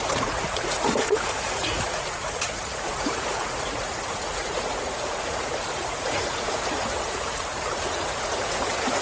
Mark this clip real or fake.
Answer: fake